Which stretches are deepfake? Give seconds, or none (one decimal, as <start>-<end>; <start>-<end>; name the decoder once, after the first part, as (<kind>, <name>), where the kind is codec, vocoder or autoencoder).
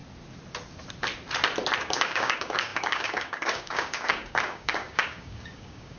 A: 1.8-6.0 (codec, DAC)